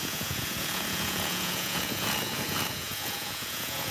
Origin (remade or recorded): remade